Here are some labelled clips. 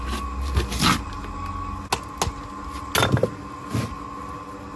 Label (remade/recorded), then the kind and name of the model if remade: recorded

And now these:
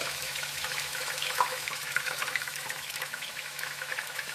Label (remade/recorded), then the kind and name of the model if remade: remade, autoencoder, DAC-VAE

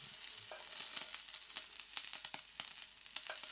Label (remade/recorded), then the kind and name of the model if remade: recorded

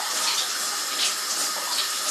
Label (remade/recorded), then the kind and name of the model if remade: recorded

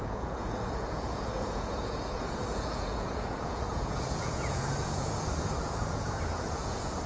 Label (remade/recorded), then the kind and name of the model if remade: remade, vocoder, Vocos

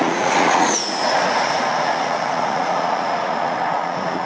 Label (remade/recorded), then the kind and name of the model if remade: remade, vocoder, Vocos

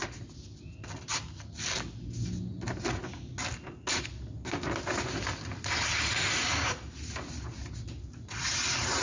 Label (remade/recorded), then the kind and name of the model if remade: recorded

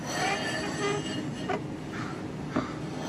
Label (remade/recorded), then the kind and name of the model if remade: recorded